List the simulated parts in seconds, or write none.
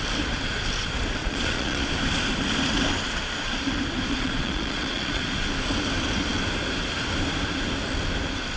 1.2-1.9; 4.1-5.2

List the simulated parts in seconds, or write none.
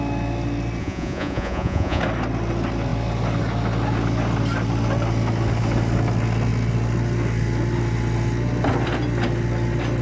0.8-2.0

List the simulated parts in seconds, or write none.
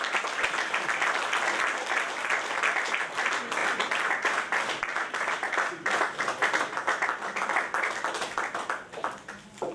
none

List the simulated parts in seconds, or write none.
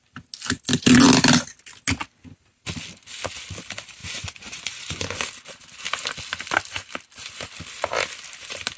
4.0-5.2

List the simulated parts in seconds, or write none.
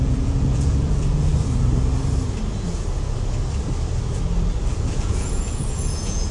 0.0-1.3; 4.7-6.3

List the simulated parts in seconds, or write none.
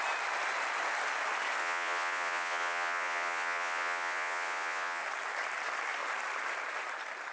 1.6-5.0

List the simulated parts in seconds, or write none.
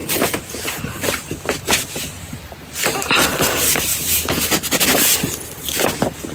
3.9-4.4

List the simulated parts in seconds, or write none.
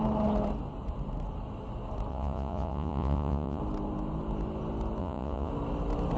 2.1-3.6; 5.0-5.5